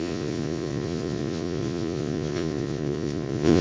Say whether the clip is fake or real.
fake